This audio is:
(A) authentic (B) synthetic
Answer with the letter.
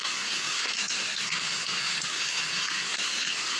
B